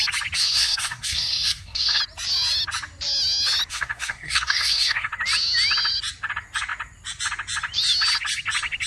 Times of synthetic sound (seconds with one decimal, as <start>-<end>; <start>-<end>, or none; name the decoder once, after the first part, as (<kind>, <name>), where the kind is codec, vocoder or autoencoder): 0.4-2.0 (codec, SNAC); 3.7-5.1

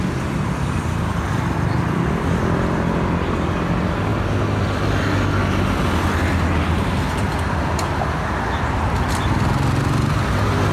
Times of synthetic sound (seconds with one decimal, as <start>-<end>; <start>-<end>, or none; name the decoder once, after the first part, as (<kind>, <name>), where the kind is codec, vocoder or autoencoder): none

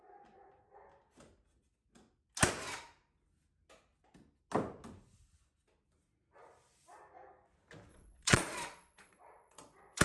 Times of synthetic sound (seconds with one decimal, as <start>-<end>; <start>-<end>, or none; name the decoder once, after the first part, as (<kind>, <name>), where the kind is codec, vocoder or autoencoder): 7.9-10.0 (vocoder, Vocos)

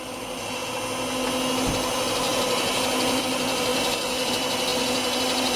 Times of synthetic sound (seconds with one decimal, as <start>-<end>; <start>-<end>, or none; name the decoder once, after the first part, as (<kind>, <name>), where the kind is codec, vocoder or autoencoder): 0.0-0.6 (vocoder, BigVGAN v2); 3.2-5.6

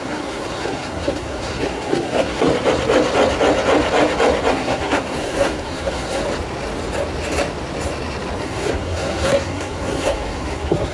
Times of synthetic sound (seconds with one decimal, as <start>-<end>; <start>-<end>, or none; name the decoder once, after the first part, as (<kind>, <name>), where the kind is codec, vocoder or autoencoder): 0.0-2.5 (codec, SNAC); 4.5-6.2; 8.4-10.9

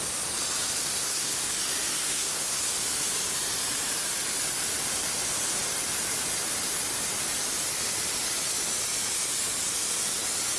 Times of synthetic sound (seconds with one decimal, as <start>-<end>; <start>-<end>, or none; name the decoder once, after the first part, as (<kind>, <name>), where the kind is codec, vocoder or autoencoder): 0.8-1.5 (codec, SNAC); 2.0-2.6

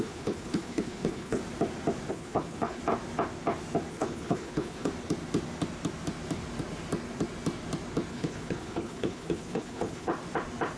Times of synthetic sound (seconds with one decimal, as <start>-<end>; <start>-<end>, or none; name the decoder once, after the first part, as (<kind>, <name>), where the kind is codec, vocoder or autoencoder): 0.0-1.4 (codec, HILCodec); 2.1-2.8; 3.9-4.9; 8.1-10.1

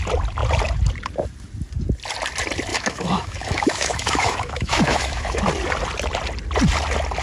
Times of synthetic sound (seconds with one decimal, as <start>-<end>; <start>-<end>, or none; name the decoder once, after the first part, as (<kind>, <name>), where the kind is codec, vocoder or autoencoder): 2.7-5.4 (autoencoder, DAC-VAE)